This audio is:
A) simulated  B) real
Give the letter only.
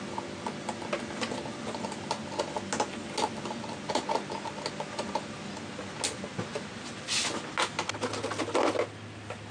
B